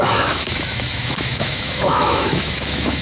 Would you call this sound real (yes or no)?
no